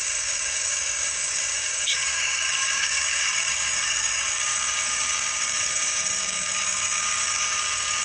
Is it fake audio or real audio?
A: fake